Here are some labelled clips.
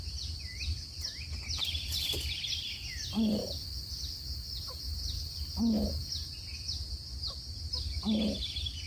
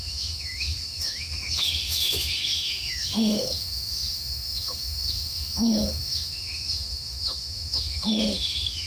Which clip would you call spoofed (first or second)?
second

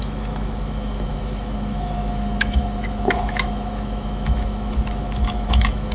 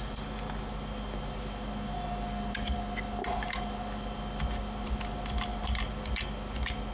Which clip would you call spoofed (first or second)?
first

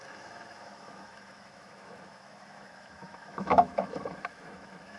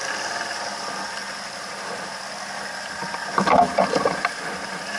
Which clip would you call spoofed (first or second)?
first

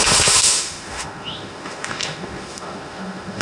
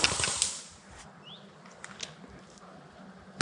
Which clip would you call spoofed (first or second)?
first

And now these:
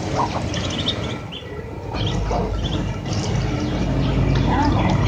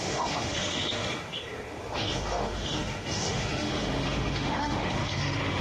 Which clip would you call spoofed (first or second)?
second